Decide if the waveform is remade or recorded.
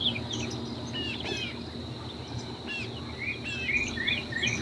recorded